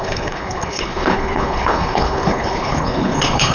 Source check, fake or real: fake